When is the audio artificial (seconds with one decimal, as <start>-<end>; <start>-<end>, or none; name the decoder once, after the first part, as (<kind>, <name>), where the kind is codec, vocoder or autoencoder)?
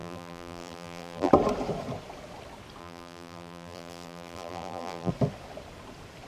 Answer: 0.0-1.3 (vocoder, BigVGAN v2); 2.8-5.1